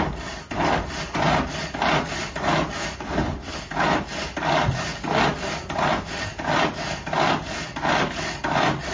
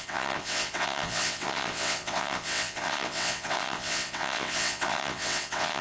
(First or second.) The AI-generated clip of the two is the second